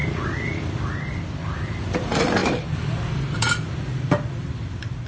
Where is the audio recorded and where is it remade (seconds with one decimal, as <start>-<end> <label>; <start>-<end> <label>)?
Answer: 0.0-5.1 remade